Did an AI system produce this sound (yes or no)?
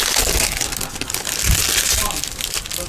no